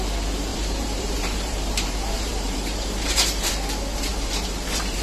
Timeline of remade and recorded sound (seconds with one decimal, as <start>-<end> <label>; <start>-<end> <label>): 0.0-0.5 recorded; 0.5-3.5 remade; 3.5-4.1 recorded; 4.1-5.0 remade